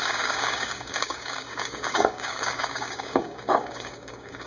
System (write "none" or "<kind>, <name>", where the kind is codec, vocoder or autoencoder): codec, DAC